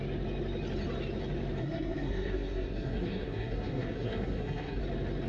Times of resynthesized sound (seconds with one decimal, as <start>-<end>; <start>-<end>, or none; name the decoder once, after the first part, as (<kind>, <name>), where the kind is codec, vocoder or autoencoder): 1.6-4.8 (codec, SNAC)